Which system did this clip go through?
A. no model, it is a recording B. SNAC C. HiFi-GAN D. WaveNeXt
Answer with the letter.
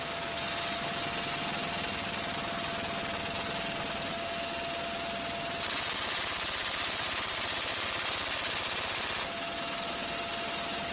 A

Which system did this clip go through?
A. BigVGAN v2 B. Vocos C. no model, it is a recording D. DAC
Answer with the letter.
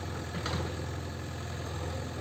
C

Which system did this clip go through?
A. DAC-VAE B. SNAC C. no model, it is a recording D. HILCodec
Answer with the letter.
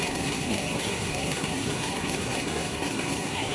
B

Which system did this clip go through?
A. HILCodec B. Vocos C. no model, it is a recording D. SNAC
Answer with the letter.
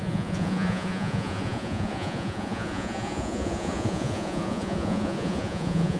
B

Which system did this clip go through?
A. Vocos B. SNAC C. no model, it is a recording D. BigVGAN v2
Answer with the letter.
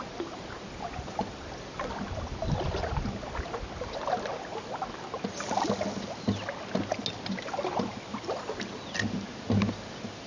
C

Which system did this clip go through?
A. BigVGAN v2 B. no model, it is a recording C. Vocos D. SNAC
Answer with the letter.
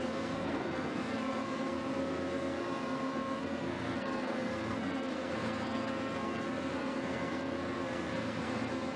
D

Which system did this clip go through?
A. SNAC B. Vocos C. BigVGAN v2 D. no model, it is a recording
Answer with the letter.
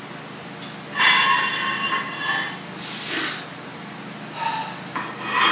D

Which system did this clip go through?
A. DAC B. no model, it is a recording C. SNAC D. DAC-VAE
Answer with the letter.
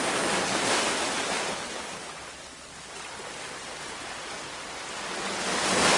B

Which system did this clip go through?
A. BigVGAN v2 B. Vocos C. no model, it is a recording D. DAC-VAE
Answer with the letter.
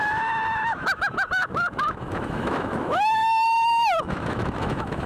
D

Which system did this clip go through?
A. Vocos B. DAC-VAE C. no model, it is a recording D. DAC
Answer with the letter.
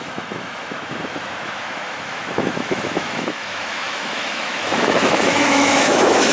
B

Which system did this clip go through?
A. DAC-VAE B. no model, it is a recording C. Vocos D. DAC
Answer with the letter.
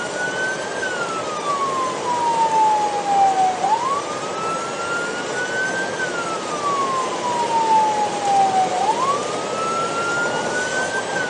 B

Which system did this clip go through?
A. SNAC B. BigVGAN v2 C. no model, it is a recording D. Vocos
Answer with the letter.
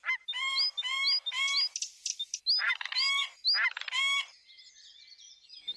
C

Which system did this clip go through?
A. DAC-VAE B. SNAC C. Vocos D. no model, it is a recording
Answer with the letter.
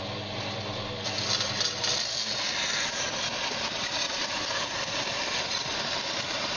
D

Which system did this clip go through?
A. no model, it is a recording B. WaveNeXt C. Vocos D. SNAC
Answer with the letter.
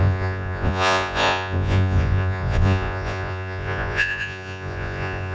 C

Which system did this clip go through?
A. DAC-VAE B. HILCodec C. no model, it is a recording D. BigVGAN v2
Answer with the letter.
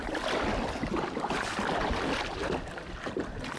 C